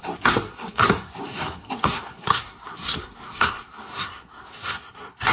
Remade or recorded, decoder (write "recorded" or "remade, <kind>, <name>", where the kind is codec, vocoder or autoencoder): remade, codec, SNAC